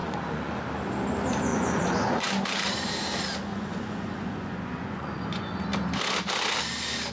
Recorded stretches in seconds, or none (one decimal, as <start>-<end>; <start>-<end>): 0.6-1.5; 2.3-3.5; 5.6-7.1